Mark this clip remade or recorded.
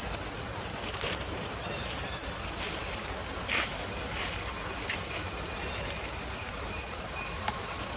recorded